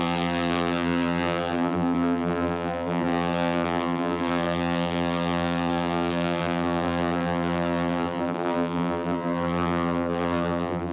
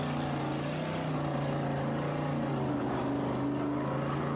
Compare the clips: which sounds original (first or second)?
second